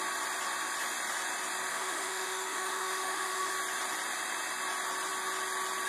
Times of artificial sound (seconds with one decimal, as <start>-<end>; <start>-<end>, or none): 1.7-3.5